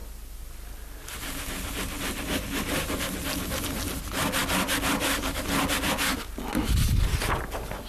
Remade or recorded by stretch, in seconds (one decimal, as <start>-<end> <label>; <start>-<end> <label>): 0.0-7.9 recorded